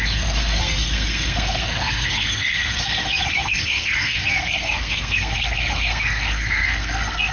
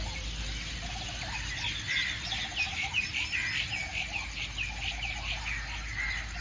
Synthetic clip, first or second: first